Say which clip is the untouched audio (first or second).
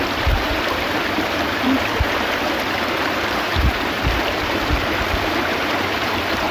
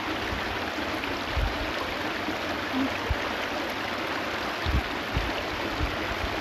second